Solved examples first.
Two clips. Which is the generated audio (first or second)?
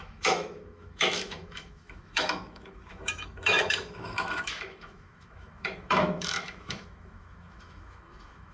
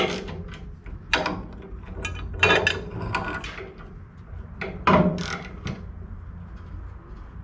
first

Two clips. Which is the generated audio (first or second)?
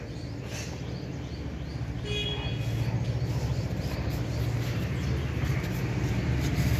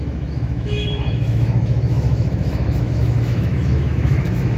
second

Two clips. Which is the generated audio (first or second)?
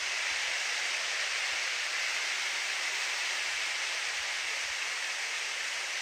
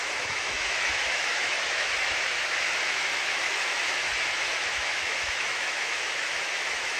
second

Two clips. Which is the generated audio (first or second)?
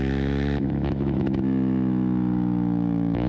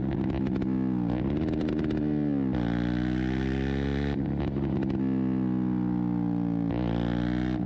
first